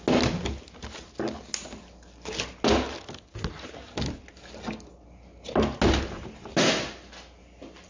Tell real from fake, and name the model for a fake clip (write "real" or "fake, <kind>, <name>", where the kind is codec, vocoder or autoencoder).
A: real